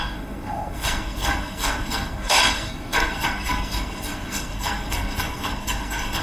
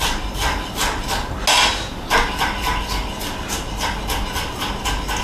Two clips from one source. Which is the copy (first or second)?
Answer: first